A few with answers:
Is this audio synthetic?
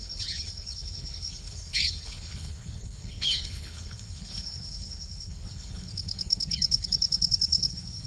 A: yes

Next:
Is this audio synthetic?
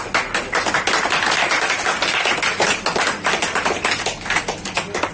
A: no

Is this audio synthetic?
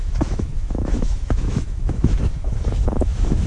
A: yes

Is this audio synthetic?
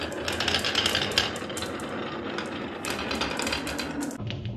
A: no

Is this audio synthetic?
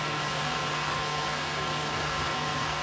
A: yes